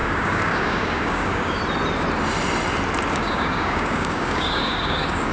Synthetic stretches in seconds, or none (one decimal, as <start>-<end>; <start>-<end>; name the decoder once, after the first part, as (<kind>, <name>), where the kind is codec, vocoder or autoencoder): 0.0-1.6 (codec, DAC); 3.1-5.3